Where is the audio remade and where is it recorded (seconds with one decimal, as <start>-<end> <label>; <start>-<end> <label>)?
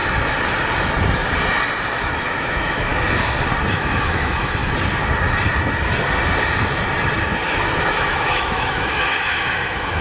0.0-2.0 recorded; 2.0-2.9 remade; 2.9-3.7 recorded; 3.7-4.6 remade; 4.6-7.9 recorded; 7.9-10.0 remade